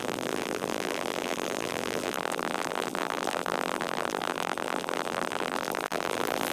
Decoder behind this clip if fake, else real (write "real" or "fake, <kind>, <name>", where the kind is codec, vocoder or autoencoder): fake, vocoder, BigVGAN v2